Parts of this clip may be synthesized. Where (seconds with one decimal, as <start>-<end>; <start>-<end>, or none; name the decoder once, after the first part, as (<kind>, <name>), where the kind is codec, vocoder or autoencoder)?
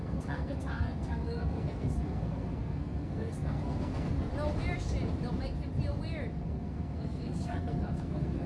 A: 0.0-4.3 (codec, SNAC); 6.4-8.5